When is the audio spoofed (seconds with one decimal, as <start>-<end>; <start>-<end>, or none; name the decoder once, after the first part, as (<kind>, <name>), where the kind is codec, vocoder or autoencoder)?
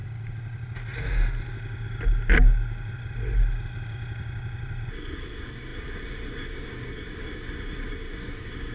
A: 4.9-8.7 (codec, SNAC)